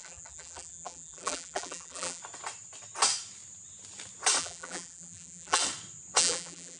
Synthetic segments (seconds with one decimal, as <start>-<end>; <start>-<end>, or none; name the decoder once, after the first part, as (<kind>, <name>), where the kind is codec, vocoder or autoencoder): 0.0-2.2 (vocoder, BigVGAN v2); 4.4-5.6; 6.2-6.8